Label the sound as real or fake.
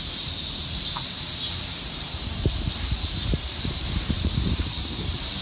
fake